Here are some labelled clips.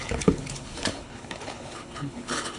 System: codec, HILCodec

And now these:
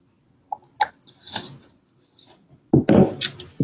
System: none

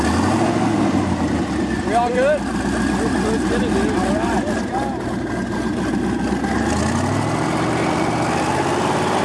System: none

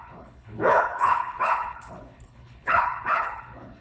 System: codec, HILCodec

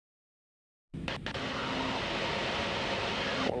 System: none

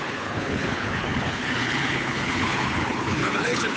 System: codec, HILCodec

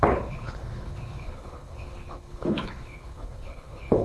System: codec, HILCodec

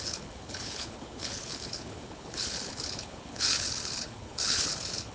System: codec, HILCodec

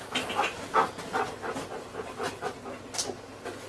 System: none